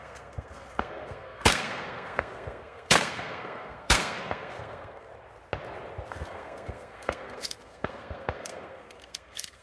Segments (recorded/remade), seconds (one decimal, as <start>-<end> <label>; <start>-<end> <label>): 0.0-5.1 remade; 5.1-6.1 recorded; 6.1-9.6 remade

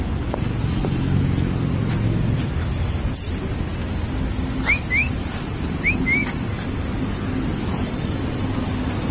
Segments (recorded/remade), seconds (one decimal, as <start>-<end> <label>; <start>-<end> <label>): 0.0-0.6 recorded; 0.6-1.2 remade; 1.2-5.0 recorded; 5.0-5.6 remade; 5.6-6.2 recorded; 6.2-7.0 remade; 7.0-7.5 recorded; 7.5-8.5 remade; 8.5-9.1 recorded

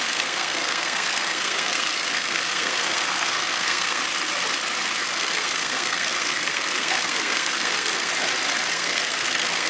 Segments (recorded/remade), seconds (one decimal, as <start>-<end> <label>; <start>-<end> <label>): 0.0-4.0 remade; 4.0-5.0 recorded; 5.0-8.1 remade; 8.1-8.7 recorded; 8.7-9.7 remade

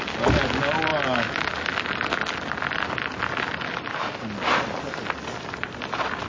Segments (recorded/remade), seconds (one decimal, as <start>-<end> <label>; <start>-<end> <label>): 0.0-6.3 recorded

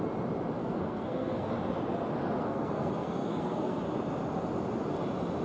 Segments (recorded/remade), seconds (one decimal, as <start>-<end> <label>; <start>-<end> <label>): 0.0-0.6 recorded; 0.6-1.5 remade; 1.5-2.4 recorded; 2.4-3.8 remade; 3.8-5.4 recorded